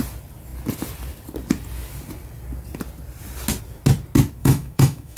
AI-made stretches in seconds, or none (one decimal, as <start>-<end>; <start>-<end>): 4.4-5.2

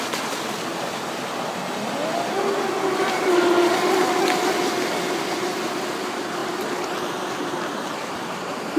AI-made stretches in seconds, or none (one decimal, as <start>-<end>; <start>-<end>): none